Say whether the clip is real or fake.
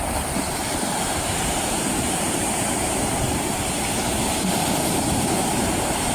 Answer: fake